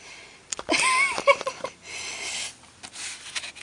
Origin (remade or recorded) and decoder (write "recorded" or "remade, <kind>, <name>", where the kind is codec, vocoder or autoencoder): recorded